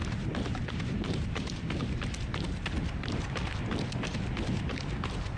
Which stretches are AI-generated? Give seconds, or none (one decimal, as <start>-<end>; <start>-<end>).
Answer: 0.0-2.2